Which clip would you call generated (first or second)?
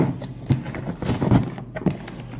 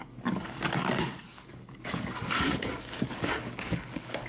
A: second